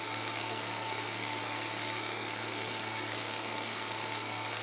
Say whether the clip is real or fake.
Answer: fake